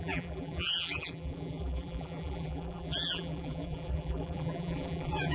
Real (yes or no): no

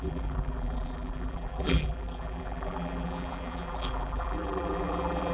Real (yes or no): no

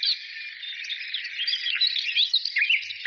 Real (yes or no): no